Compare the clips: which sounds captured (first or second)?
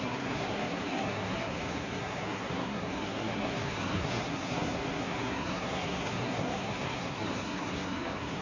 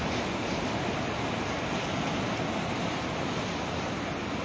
second